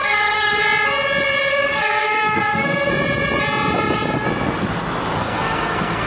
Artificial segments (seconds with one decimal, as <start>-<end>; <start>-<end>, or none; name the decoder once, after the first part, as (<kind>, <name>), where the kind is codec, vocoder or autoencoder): 0.0-0.6 (codec, SNAC); 1.5-2.9; 5.2-6.1